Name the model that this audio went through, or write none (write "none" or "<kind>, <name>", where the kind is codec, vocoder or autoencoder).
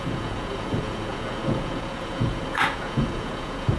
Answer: vocoder, Vocos